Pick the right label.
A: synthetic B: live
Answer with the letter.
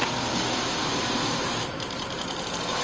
A